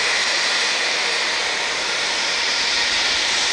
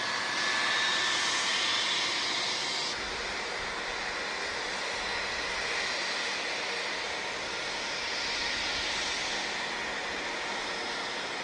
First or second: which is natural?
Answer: second